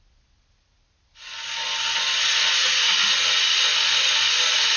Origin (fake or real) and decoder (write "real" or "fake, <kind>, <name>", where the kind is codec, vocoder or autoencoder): real